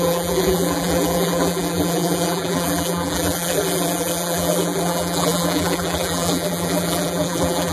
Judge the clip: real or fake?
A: fake